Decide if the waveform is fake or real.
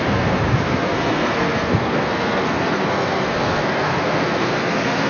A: fake